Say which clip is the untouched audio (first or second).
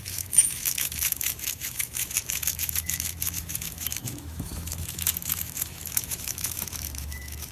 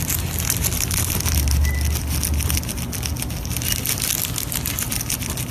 second